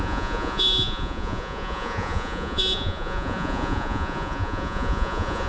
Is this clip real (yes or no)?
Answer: no